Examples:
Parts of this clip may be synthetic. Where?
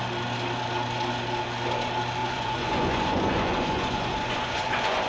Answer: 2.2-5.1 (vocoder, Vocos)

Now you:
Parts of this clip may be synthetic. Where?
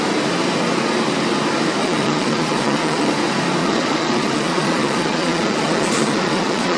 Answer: 1.8-3.1 (vocoder, Vocos); 3.6-6.8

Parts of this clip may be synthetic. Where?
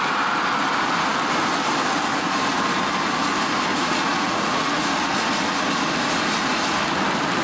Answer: 3.7-4.9 (vocoder, Vocos)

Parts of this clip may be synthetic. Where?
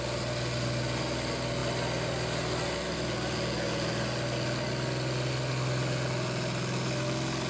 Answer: none